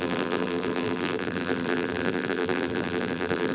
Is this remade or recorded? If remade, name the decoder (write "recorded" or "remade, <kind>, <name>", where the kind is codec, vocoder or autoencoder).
remade, vocoder, BigVGAN v2